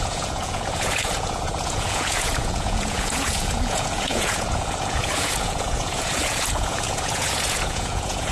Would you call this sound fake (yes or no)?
yes